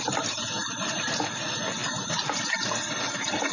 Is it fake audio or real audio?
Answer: real